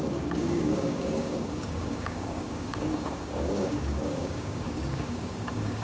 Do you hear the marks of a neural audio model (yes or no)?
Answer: yes